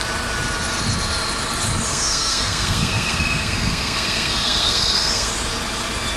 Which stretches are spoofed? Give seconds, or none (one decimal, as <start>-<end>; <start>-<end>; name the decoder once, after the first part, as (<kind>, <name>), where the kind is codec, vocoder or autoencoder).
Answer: 1.9-5.3 (codec, SNAC)